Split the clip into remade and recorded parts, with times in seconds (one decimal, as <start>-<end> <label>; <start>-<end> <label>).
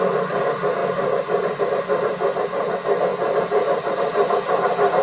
0.0-5.0 recorded